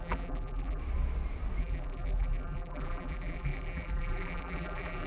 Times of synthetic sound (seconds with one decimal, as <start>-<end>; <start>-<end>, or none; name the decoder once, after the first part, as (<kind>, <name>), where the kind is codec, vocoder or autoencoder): 0.0-0.8 (vocoder, BigVGAN v2); 1.6-5.1